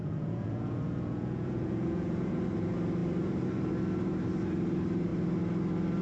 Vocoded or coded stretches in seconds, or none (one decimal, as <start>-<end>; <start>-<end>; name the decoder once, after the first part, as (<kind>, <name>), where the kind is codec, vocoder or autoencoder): 0.0-2.3 (vocoder, Vocos)